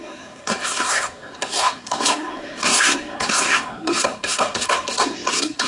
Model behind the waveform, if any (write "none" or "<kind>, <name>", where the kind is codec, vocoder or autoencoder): codec, SNAC